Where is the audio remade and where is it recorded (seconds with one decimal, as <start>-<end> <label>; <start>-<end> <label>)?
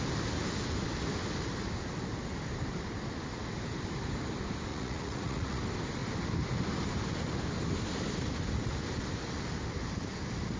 0.0-4.7 recorded; 4.7-5.6 remade; 5.6-10.6 recorded